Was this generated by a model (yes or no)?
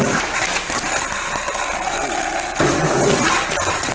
no